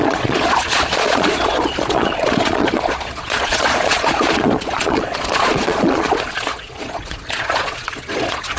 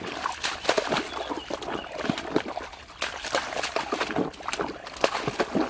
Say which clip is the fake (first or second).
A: first